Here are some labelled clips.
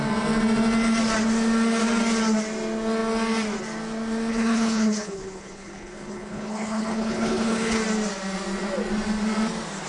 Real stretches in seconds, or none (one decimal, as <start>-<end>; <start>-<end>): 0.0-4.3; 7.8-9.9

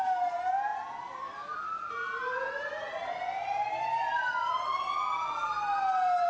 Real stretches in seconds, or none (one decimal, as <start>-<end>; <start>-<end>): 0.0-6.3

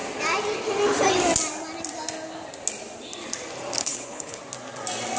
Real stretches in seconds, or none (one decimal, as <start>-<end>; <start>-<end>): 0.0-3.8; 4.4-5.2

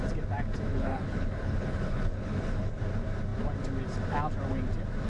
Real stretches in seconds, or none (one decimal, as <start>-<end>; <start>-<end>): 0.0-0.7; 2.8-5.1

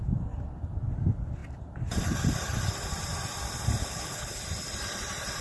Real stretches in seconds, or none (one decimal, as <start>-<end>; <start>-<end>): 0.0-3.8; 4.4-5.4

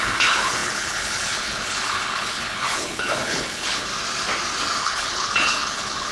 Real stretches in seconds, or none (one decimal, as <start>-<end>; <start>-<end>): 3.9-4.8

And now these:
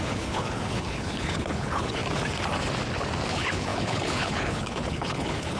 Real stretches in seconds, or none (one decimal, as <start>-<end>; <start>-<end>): 2.0-3.3